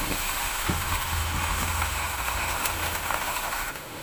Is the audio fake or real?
fake